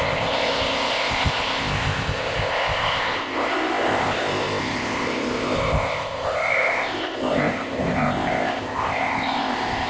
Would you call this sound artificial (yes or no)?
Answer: yes